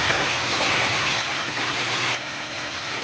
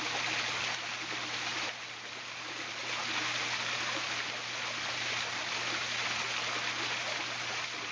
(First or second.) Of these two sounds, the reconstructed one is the first